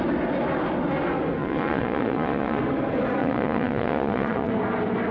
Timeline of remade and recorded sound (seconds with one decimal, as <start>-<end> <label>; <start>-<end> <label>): 0.0-1.4 recorded; 1.4-2.6 remade; 2.6-3.2 recorded; 3.2-4.5 remade; 4.5-5.1 recorded